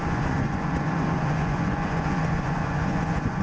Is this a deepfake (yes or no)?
yes